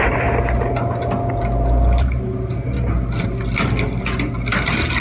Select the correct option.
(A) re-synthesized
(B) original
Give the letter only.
B